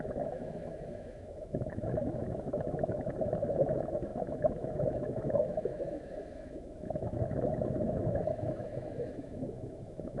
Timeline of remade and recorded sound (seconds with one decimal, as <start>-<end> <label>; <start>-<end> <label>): 0.0-10.2 remade